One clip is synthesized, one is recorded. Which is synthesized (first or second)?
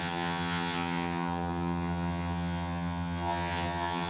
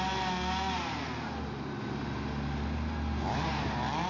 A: first